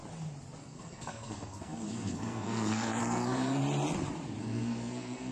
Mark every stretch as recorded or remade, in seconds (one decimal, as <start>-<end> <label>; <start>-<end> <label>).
0.0-0.6 recorded; 0.6-3.6 remade; 3.6-4.4 recorded; 4.4-5.3 remade